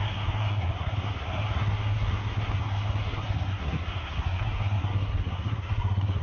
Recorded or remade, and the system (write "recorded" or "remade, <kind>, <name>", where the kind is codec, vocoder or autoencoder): remade, codec, SNAC